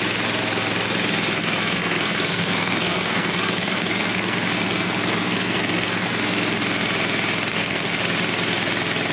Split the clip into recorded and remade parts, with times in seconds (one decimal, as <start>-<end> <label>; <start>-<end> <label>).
0.0-1.4 recorded; 1.4-6.1 remade; 6.1-7.5 recorded; 7.5-8.0 remade; 8.0-9.1 recorded